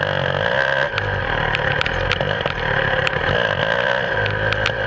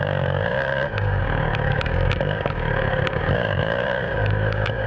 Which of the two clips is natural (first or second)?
first